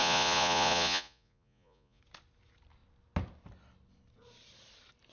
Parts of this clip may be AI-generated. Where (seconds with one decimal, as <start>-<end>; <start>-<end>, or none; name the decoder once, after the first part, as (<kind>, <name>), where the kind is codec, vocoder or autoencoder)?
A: 0.0-2.0 (vocoder, Vocos)